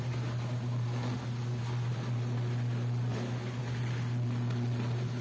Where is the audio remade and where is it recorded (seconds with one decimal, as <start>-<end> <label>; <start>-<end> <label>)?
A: 0.0-5.2 recorded

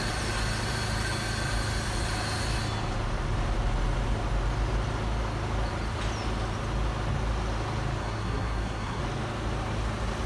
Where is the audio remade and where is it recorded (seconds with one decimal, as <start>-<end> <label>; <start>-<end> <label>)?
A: 0.0-8.0 recorded; 8.0-9.0 remade; 9.0-10.3 recorded

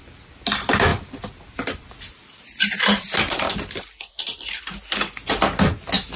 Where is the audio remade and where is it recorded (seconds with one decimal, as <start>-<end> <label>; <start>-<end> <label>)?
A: 0.0-0.9 recorded; 0.9-4.6 remade; 4.6-6.2 recorded

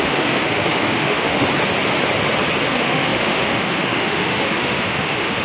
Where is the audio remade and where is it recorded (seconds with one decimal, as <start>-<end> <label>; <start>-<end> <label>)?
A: 0.0-1.4 remade; 1.4-2.7 recorded; 2.7-5.4 remade

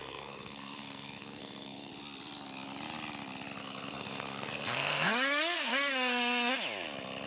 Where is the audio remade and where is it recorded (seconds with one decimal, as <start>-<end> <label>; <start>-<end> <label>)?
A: 0.0-1.9 remade; 1.9-3.6 recorded; 3.6-6.5 remade; 6.5-7.3 recorded

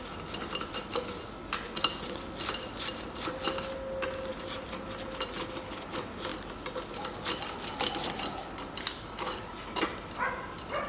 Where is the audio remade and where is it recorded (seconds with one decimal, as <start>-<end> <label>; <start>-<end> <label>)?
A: 0.0-10.9 recorded